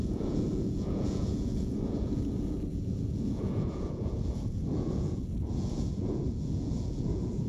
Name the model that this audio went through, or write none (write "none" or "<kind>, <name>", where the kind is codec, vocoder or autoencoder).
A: vocoder, Vocos